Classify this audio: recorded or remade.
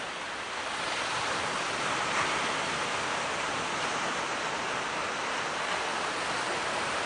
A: recorded